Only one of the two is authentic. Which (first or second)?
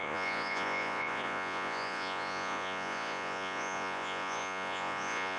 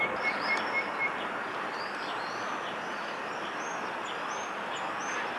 second